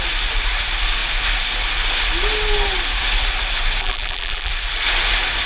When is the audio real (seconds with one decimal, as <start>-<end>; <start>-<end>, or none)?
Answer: 0.0-3.8; 4.5-5.5